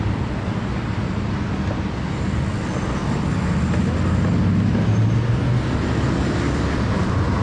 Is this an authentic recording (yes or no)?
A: yes